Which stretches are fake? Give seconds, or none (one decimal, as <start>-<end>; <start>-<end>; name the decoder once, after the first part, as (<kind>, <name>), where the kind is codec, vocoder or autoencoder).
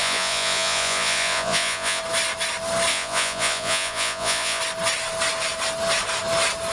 0.0-2.0 (vocoder, Vocos); 2.9-4.6